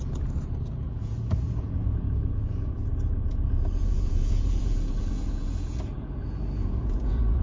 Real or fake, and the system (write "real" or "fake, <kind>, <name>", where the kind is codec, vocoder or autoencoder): fake, vocoder, Vocos